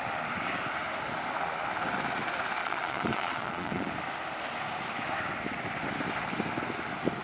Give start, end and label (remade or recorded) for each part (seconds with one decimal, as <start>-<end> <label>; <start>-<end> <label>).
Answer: 0.0-2.6 recorded; 2.6-3.9 remade; 3.9-7.2 recorded